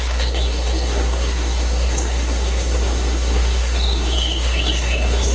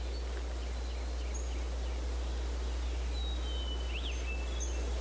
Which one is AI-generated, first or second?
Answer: first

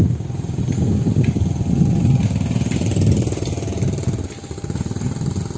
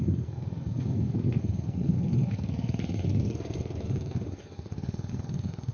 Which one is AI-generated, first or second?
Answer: second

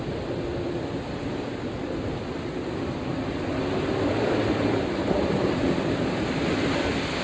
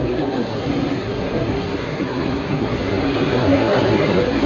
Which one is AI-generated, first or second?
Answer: second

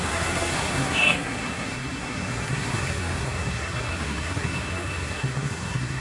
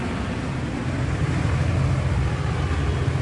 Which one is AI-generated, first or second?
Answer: first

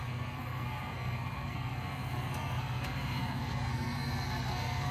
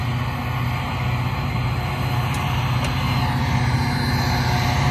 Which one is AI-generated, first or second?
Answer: first